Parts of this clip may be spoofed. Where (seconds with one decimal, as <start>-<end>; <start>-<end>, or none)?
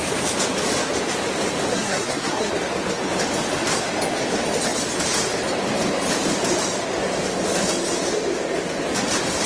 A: 1.7-2.5